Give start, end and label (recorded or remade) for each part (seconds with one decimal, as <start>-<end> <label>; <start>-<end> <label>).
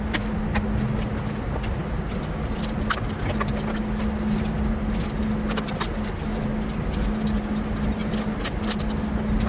0.0-9.5 recorded